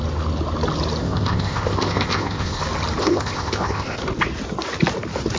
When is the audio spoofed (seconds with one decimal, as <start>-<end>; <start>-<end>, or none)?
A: 1.0-2.6; 3.0-4.0